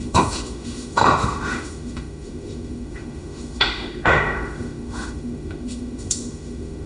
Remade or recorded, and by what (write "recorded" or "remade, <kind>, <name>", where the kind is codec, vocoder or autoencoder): remade, autoencoder, DAC-VAE